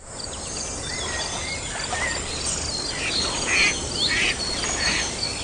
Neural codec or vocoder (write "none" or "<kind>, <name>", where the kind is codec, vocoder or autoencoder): none